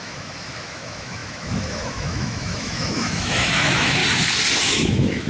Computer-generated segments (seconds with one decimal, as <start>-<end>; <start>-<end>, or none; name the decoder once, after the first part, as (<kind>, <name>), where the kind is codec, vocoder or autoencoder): 0.0-4.0 (autoencoder, DAC-VAE); 4.6-5.3